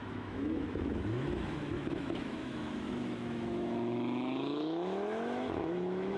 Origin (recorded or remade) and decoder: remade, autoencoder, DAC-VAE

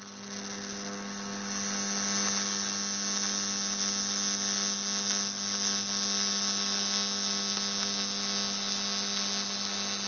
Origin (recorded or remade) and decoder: recorded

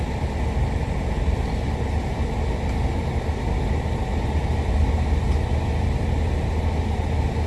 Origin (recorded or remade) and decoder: recorded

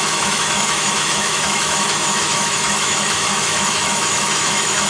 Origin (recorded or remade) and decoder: remade, autoencoder, DAC-VAE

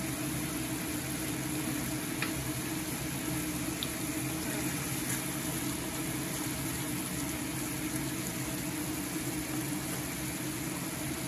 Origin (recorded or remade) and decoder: recorded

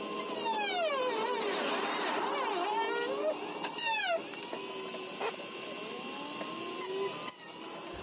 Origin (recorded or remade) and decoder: recorded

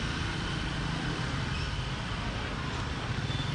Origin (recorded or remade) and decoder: recorded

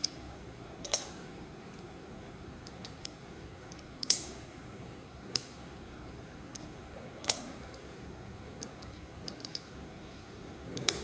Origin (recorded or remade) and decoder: remade, codec, SNAC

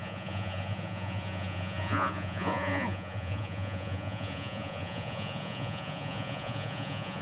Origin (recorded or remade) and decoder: remade, vocoder, Vocos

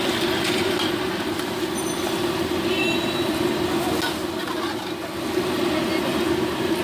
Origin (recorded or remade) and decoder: recorded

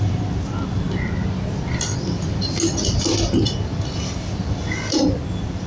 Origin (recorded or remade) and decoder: recorded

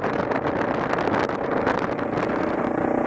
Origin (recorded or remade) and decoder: recorded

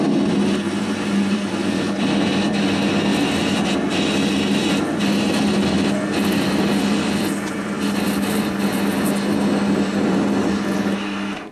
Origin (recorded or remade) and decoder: recorded